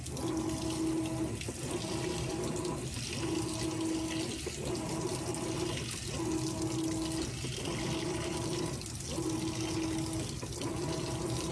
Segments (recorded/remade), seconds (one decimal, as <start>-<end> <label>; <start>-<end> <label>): 0.0-11.5 recorded